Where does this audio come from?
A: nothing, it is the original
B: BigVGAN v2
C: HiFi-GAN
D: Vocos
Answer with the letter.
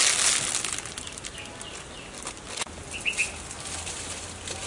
A